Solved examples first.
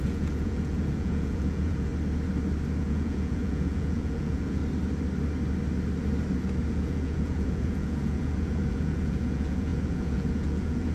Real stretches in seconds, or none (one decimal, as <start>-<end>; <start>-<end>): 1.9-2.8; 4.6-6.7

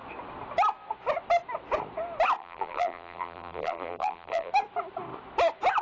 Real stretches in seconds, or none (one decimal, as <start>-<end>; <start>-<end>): 0.0-2.4; 4.5-5.8

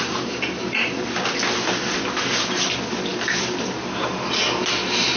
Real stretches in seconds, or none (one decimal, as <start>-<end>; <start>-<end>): 0.0-0.6; 1.2-3.1; 4.0-5.2

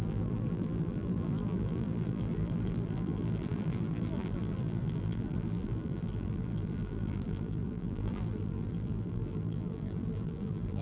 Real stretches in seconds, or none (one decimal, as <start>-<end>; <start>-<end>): none

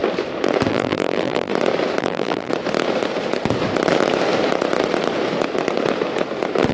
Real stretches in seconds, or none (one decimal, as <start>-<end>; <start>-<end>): 0.0-0.7; 1.5-2.0; 2.5-6.7

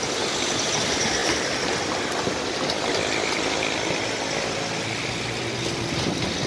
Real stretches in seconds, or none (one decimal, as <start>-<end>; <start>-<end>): 0.0-6.5

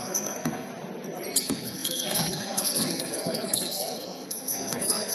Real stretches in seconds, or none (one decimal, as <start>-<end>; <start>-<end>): 0.7-1.4